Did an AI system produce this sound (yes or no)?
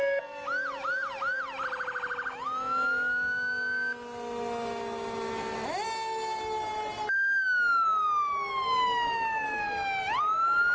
no